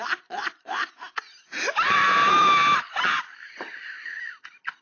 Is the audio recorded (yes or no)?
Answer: no